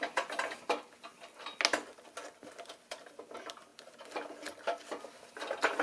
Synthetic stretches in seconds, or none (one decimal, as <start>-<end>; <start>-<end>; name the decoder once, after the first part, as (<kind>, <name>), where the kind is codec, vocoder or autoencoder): none